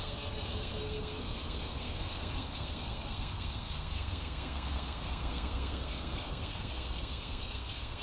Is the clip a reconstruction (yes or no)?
yes